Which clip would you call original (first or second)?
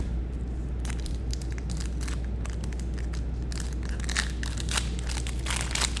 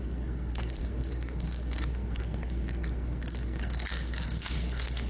first